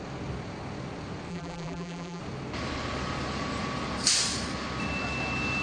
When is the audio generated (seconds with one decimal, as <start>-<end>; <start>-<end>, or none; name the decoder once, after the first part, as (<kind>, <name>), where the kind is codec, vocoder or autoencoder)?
1.3-2.2 (vocoder, BigVGAN v2)